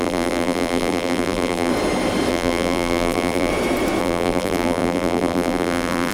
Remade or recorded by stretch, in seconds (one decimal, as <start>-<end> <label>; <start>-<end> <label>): 0.0-1.7 remade; 1.7-2.3 recorded; 2.3-3.5 remade; 3.5-4.0 recorded; 4.0-6.1 remade